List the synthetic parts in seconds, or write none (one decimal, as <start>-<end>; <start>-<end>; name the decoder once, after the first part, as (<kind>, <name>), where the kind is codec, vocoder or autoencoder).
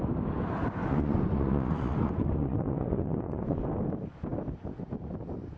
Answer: 0.8-3.6 (vocoder, Vocos)